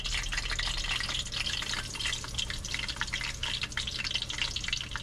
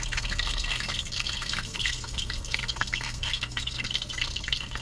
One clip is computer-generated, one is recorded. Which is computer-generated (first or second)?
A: second